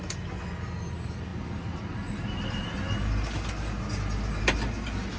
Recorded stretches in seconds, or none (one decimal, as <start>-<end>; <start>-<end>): 0.0-5.2